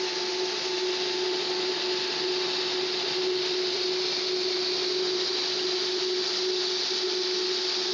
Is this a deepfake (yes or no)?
no